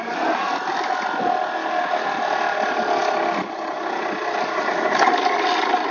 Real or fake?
real